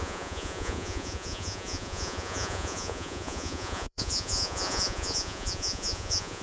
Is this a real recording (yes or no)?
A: no